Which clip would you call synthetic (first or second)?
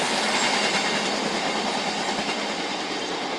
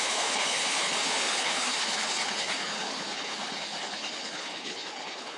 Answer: second